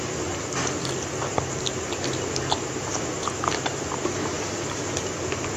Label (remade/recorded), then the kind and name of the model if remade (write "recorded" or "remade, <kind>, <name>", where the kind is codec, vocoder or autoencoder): recorded